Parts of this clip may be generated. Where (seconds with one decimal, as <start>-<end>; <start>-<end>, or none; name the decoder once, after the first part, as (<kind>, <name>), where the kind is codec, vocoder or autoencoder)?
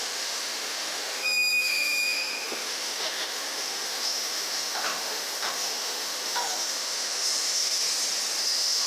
0.0-7.8 (autoencoder, DAC-VAE); 8.4-8.9